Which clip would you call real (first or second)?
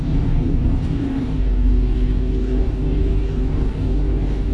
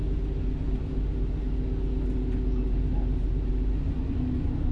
second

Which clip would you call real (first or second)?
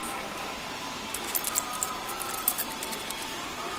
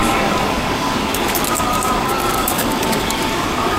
first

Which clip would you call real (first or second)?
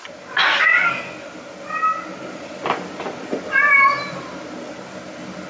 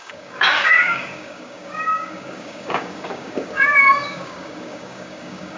first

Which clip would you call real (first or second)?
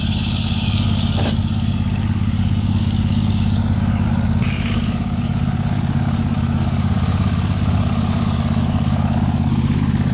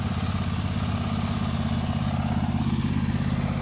second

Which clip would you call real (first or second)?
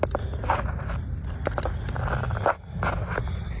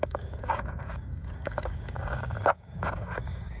first